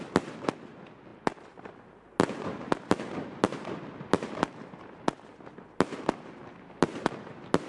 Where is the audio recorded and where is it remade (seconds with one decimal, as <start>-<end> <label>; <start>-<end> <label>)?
0.0-7.7 recorded